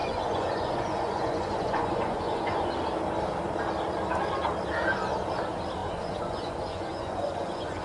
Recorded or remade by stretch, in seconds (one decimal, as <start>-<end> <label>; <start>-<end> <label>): 0.0-2.7 remade; 2.7-5.8 recorded; 5.8-7.8 remade